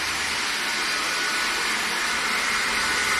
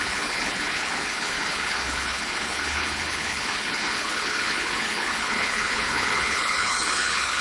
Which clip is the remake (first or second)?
second